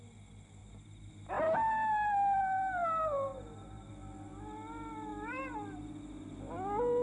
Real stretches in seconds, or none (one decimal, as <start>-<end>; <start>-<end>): 0.0-0.6; 1.1-3.3; 3.9-7.0